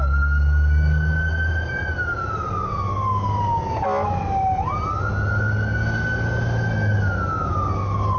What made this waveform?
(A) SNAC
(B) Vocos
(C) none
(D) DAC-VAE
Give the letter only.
C